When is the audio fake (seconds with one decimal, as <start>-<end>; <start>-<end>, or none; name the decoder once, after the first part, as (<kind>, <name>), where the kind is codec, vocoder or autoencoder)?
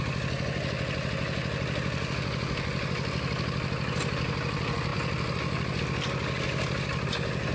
none